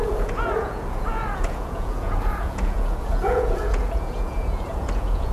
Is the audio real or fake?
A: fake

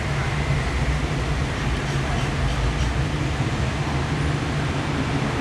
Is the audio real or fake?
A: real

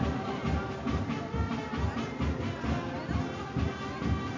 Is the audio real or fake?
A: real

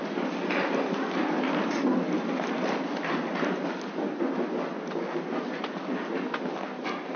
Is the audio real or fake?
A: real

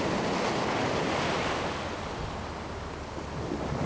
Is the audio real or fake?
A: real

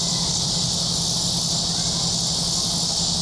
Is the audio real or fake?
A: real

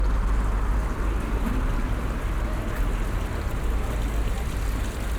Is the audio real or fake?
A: real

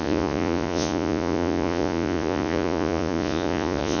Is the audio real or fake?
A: fake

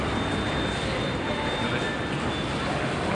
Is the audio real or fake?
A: real